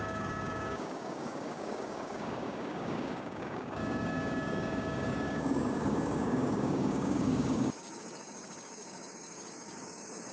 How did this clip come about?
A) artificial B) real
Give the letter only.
A